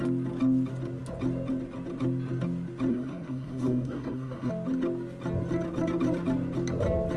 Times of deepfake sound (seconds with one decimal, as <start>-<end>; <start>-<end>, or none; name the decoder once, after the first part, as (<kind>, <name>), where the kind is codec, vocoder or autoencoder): 2.9-4.5 (codec, SNAC)